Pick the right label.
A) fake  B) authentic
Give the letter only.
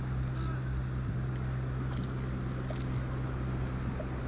B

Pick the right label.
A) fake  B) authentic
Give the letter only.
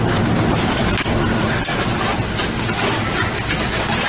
B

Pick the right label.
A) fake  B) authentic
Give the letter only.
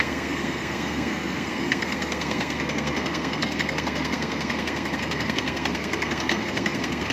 A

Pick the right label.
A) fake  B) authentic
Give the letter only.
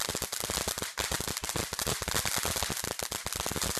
B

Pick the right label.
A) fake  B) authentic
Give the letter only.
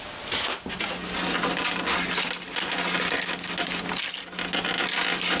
B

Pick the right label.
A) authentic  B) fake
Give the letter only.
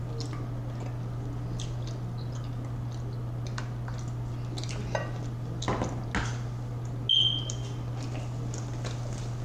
A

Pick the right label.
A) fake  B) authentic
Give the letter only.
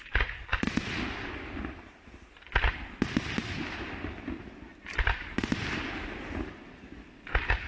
B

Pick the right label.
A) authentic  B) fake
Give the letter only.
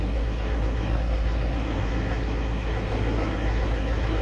B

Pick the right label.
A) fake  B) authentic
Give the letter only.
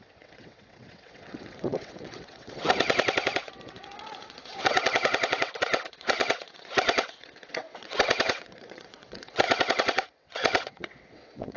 A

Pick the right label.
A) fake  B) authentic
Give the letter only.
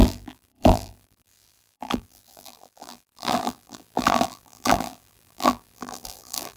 A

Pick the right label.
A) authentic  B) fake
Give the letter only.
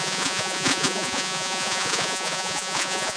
B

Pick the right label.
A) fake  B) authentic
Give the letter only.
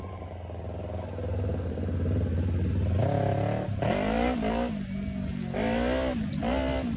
B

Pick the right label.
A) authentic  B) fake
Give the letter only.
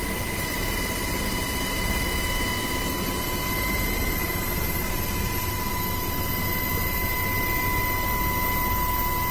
A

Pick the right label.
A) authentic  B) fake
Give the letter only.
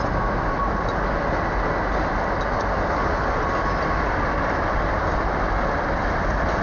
A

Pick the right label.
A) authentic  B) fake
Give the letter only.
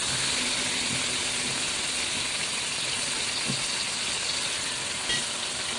A